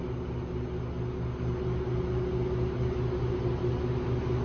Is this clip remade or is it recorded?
recorded